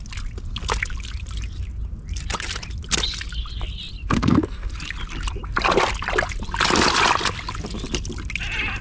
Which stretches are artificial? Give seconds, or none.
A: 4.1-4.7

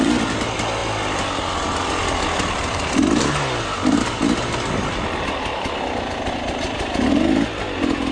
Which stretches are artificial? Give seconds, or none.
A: none

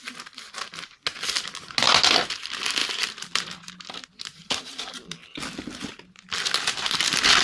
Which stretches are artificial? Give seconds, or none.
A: 5.2-6.5

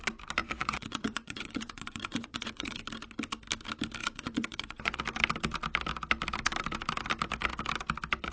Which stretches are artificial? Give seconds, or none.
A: 0.4-2.8; 4.0-5.0